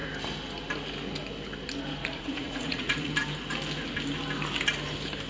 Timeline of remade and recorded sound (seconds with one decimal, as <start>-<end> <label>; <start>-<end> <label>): 0.0-2.0 recorded; 2.0-3.1 remade; 3.1-5.3 recorded